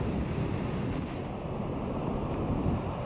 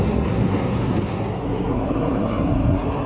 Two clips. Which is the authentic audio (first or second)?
first